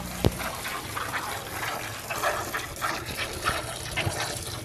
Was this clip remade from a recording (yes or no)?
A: no